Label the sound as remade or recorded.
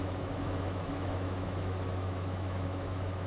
remade